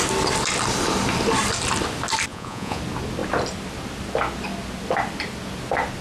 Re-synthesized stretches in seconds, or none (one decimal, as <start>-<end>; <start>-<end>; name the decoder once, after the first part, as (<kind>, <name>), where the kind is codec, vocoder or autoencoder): 2.3-2.8 (vocoder, Vocos)